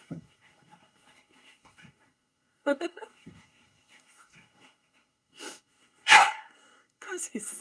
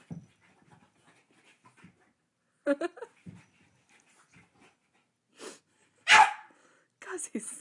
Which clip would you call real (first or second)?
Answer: second